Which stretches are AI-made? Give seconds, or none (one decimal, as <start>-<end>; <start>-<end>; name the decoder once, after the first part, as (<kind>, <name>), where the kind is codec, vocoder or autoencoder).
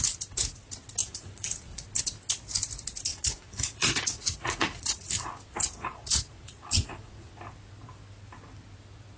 1.0-1.8 (vocoder, Vocos); 3.1-5.3; 5.8-7.3